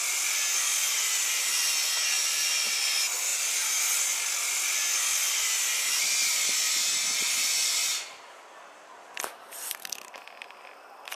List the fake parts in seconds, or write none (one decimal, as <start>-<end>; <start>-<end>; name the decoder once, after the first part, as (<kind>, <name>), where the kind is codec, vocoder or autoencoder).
none